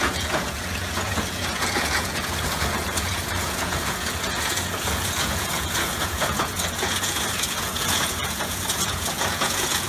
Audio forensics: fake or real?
fake